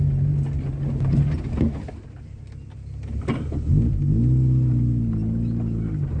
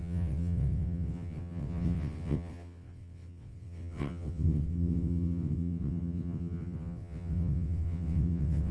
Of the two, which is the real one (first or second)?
first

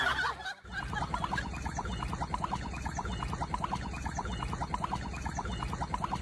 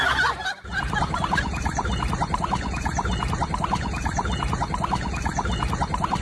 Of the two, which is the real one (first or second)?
first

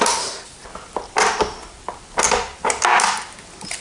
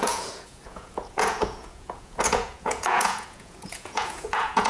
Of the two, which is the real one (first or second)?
first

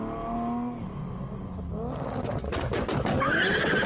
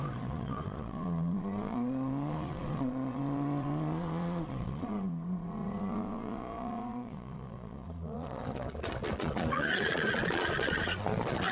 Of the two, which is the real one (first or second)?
first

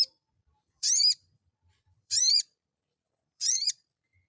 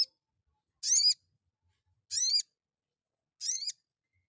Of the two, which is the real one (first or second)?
second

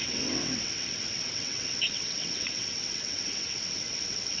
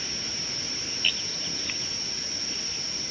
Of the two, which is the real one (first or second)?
second